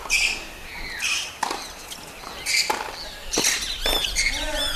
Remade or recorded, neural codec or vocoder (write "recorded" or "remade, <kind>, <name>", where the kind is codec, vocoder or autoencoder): recorded